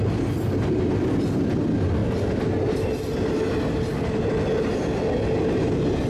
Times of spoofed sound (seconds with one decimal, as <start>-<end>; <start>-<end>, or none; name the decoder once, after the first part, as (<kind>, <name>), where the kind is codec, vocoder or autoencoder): none